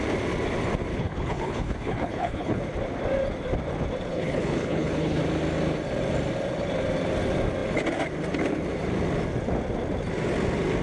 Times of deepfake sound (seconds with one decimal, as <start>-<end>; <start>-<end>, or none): 0.9-2.6; 4.1-5.2